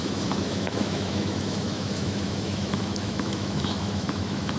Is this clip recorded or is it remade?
remade